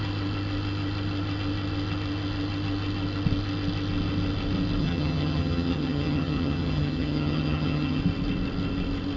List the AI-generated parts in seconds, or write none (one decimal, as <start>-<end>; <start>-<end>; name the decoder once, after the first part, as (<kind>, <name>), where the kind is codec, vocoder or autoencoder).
4.8-8.0 (vocoder, HiFi-GAN)